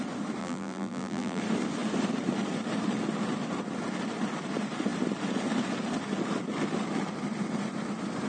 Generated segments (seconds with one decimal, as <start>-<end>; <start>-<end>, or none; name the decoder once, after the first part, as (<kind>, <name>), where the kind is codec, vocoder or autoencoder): 0.4-1.4 (vocoder, BigVGAN v2)